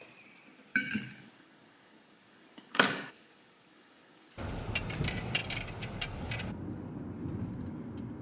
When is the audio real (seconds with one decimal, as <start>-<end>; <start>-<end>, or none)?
0.0-0.7; 4.3-8.2

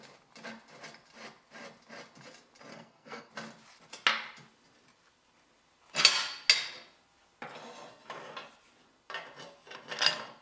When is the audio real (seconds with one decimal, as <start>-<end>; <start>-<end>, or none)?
0.0-2.7; 3.3-10.4

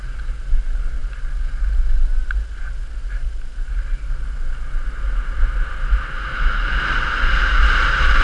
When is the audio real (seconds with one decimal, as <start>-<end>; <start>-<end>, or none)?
0.0-8.2

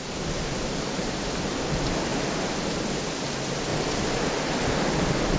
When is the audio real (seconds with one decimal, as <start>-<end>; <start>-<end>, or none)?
0.0-3.7; 4.7-5.4

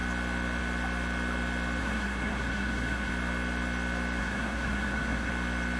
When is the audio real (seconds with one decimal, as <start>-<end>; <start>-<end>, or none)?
0.0-1.8; 3.1-4.2; 5.3-5.8